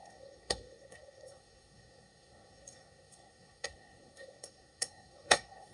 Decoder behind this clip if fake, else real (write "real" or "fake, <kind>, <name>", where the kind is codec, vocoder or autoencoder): fake, codec, SNAC